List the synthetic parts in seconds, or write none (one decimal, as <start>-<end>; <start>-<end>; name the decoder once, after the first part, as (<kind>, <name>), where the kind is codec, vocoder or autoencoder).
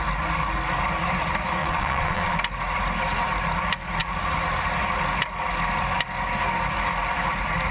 1.6-2.3 (vocoder, WaveNeXt)